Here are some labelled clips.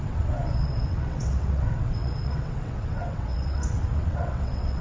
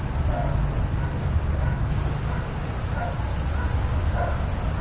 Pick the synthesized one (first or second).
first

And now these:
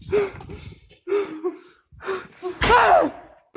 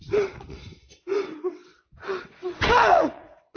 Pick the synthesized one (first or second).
second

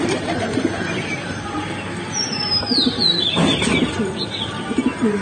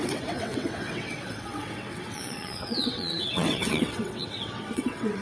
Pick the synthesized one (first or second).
second